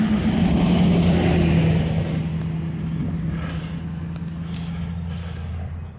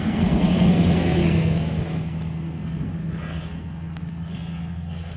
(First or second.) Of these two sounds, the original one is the first